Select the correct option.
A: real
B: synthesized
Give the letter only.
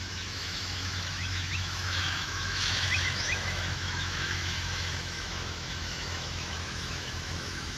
B